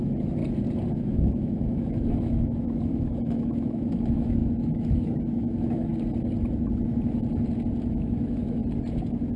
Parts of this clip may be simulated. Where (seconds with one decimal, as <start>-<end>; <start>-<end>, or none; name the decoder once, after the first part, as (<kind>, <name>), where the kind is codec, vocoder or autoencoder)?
0.0-0.4 (autoencoder, DAC-VAE); 0.9-5.9; 7.9-8.6